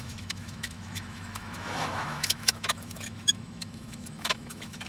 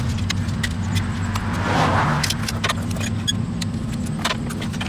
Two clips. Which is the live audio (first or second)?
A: second